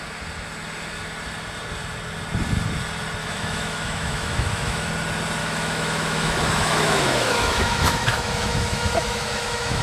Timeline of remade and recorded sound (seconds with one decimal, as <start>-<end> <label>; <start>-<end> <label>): 0.0-3.2 recorded; 3.2-4.9 remade; 4.9-5.4 recorded; 5.4-9.8 remade